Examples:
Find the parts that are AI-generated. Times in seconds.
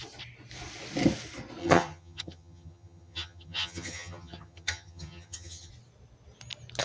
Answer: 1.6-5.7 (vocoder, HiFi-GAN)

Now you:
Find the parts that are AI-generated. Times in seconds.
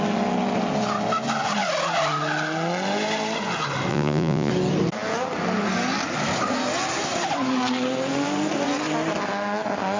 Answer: 3.9-4.5 (vocoder, Vocos)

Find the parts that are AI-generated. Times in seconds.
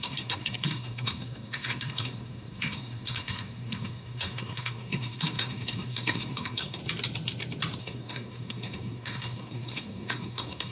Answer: 0.0-6.8 (codec, SNAC); 7.8-10.7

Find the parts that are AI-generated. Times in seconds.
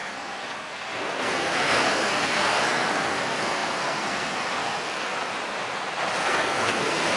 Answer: 0.0-5.3 (codec, SNAC); 6.2-7.2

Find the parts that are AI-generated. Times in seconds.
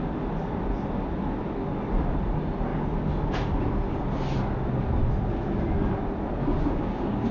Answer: 6.4-7.3 (codec, DAC)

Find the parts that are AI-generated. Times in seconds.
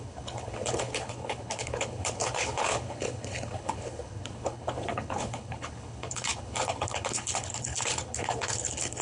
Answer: 0.0-9.0 (codec, HILCodec)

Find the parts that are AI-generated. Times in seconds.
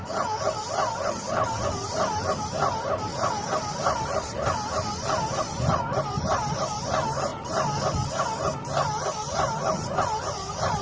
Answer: none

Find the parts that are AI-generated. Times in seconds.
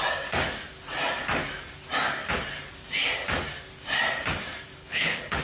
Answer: 4.8-5.4 (codec, HILCodec)